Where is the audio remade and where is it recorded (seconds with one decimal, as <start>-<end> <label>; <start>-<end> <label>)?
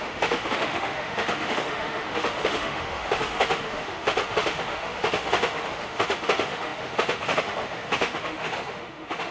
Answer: 0.0-9.3 remade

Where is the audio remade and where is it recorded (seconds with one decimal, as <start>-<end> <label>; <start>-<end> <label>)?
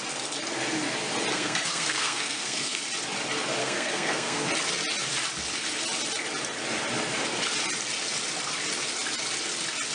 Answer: 0.0-1.3 recorded; 1.3-2.8 remade; 2.8-3.6 recorded; 3.6-4.5 remade; 4.5-9.9 recorded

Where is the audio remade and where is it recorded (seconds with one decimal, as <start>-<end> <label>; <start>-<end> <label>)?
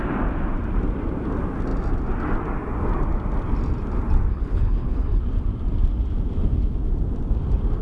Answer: 0.0-4.3 recorded; 4.3-5.2 remade; 5.2-7.8 recorded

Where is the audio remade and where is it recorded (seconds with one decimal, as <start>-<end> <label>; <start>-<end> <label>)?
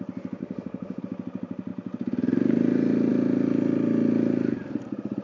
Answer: 0.0-0.4 recorded; 0.4-1.0 remade; 1.0-5.2 recorded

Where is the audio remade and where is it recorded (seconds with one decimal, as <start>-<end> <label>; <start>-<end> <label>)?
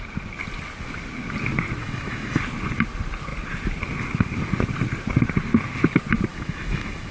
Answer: 0.0-1.8 recorded; 1.8-2.4 remade; 2.4-6.3 recorded; 6.3-7.1 remade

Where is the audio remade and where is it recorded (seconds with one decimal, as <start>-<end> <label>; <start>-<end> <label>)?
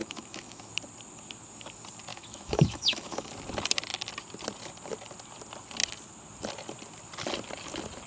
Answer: 0.0-0.7 remade; 0.7-2.1 recorded; 2.1-3.3 remade; 3.3-8.1 recorded